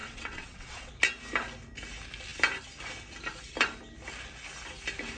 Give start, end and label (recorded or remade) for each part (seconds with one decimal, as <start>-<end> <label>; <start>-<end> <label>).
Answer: 0.0-0.9 remade; 0.9-5.2 recorded